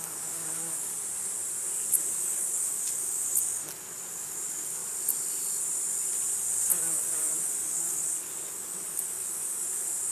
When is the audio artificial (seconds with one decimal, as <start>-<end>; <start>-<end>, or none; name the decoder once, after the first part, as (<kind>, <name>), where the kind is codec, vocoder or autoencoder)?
0.0-0.9 (codec, DAC); 2.1-3.6; 4.1-4.8; 6.7-10.1